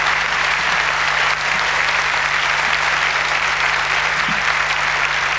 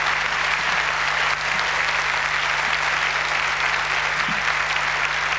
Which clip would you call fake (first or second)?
first